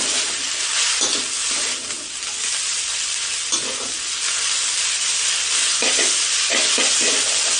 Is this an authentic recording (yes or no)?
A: yes